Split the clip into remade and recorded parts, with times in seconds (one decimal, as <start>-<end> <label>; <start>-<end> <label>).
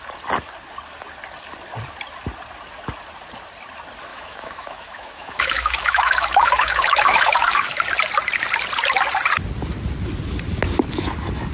0.0-4.1 recorded; 4.1-7.8 remade; 7.8-11.5 recorded